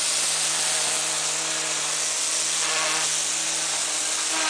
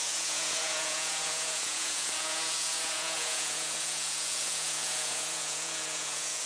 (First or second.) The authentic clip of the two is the first